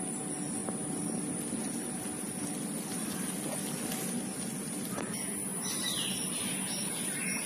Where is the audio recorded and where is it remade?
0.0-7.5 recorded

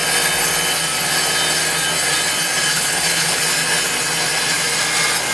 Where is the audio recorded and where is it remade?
0.0-2.7 recorded; 2.7-3.4 remade; 3.4-5.3 recorded

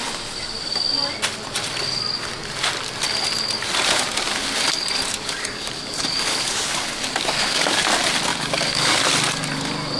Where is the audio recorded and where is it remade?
0.0-5.1 recorded; 5.1-7.8 remade; 7.8-8.3 recorded; 8.3-9.0 remade; 9.0-10.0 recorded

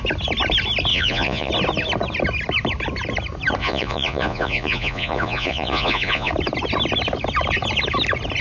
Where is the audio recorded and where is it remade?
0.0-0.9 recorded; 0.9-1.5 remade; 1.5-3.6 recorded; 3.6-6.3 remade; 6.3-8.4 recorded

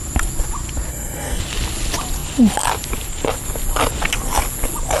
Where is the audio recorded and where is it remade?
0.0-0.9 recorded; 0.9-1.4 remade; 1.4-5.0 recorded